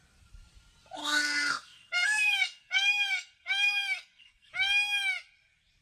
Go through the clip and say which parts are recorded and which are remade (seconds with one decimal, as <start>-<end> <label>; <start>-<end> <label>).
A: 0.0-1.0 recorded; 1.0-4.5 remade; 4.5-5.8 recorded